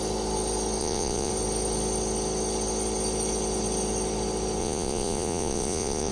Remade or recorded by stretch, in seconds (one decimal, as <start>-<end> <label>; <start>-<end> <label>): 0.0-0.8 recorded; 0.8-1.3 remade; 1.3-4.6 recorded; 4.6-6.1 remade